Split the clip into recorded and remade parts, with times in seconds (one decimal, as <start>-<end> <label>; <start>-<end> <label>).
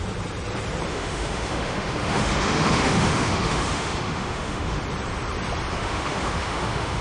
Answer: 0.0-0.9 recorded; 0.9-4.8 remade; 4.8-5.7 recorded; 5.7-7.0 remade